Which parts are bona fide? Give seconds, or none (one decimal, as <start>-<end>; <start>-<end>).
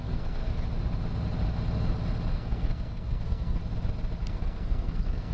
0.5-2.3; 3.6-4.3